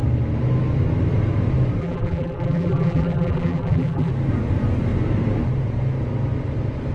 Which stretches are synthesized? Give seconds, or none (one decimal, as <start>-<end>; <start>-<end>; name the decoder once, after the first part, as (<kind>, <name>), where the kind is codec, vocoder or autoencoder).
1.8-4.1 (vocoder, BigVGAN v2)